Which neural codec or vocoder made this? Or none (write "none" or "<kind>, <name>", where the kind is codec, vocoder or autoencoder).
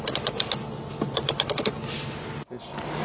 none